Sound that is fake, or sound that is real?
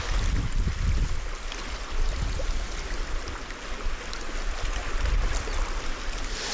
real